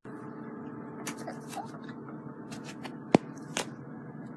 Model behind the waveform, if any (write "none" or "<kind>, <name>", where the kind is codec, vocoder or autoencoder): none